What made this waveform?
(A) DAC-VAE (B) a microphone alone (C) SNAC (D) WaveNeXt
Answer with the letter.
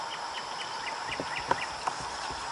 B